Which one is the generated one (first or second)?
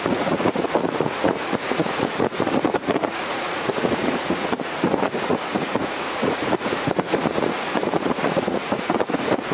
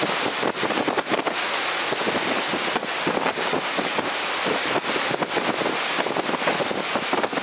first